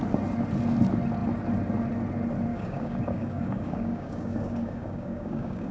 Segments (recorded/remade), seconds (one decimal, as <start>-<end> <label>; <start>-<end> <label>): 0.0-2.5 recorded; 2.5-5.7 remade